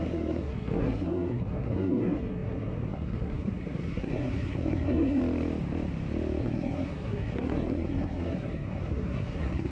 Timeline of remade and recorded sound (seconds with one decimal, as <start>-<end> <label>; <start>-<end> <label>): 0.0-5.2 remade; 5.2-6.4 recorded; 6.4-9.7 remade

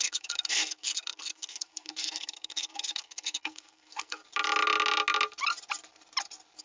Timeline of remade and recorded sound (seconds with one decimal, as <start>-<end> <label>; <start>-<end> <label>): 0.0-4.2 remade; 4.2-6.6 recorded

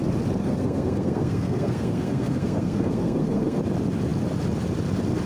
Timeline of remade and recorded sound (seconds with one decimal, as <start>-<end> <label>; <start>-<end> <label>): 0.0-0.4 recorded; 0.4-3.6 remade; 3.6-5.3 recorded

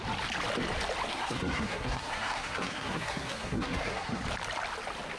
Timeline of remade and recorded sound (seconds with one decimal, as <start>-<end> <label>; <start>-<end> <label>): 0.0-1.1 recorded; 1.1-4.2 remade; 4.2-5.2 recorded

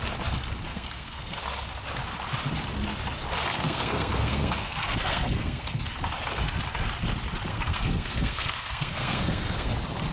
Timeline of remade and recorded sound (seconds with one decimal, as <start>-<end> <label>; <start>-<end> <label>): 0.0-0.7 recorded; 0.7-1.4 remade; 1.4-3.5 recorded; 3.5-5.8 remade; 5.8-7.5 recorded; 7.5-9.7 remade; 9.7-10.1 recorded

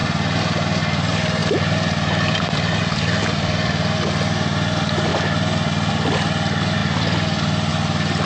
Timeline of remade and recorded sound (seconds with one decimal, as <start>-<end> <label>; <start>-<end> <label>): 0.0-8.3 recorded

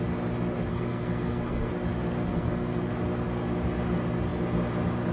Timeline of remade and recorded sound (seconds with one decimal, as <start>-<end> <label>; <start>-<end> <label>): 0.0-0.7 recorded; 0.7-1.7 remade; 1.7-2.3 recorded; 2.3-2.9 remade; 2.9-5.1 recorded